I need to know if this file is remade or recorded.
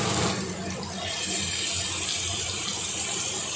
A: recorded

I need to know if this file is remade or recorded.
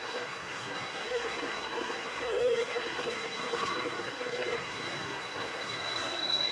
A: remade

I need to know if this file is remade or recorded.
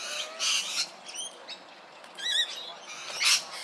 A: recorded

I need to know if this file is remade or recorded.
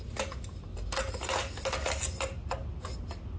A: recorded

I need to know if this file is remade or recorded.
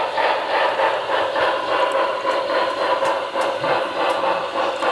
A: recorded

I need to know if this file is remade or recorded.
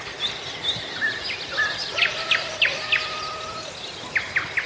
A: recorded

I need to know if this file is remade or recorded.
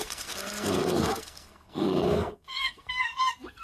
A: remade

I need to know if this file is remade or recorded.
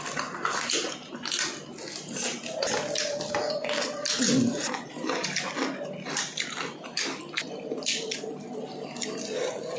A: recorded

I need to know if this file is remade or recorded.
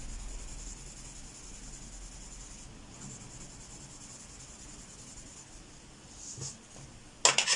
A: recorded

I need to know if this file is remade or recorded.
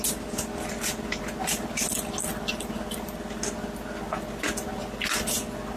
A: recorded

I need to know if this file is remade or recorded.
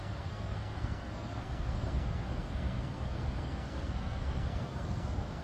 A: remade